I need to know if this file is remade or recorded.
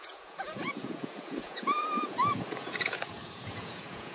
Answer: remade